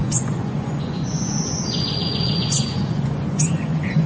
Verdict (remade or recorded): remade